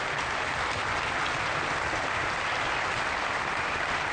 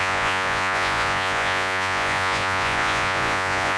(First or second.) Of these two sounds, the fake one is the second